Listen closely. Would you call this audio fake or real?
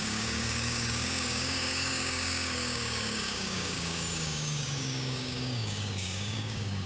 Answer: fake